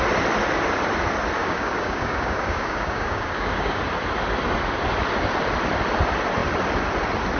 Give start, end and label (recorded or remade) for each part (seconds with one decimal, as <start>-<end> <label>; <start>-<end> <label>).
0.0-1.4 recorded; 1.4-3.8 remade; 3.8-7.4 recorded